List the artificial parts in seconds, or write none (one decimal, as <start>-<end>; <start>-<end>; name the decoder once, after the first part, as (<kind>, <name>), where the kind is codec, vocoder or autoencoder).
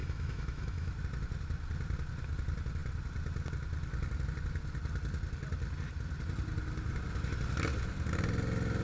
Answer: 0.0-0.9 (autoencoder, DAC-VAE)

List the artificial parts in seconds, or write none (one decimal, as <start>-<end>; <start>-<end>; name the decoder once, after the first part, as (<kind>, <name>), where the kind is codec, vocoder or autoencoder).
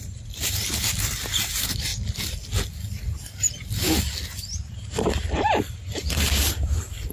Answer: 0.0-1.9 (vocoder, BigVGAN v2); 4.7-7.1